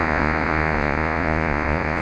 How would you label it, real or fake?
fake